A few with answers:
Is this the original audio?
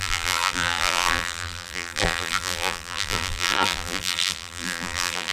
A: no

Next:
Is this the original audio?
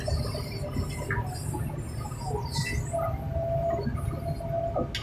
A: yes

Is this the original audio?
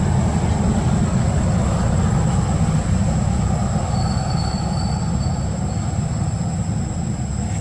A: yes